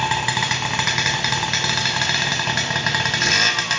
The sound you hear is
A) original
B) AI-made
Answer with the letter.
A